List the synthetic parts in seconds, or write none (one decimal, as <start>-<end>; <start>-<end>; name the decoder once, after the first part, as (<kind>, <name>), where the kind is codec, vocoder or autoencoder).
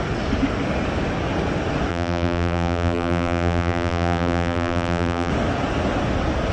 1.9-5.3 (vocoder, BigVGAN v2)